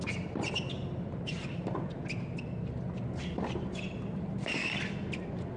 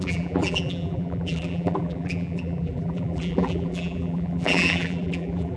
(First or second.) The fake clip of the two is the second